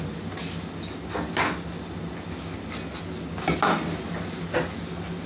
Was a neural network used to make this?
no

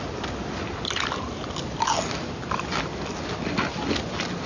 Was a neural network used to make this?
no